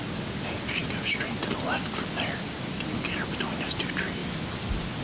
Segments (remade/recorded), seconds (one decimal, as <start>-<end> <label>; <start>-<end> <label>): 0.0-5.0 recorded